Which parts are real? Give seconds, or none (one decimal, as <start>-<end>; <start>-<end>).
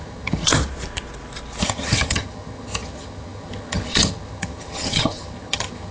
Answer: 0.6-1.6